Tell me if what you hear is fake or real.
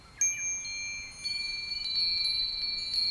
real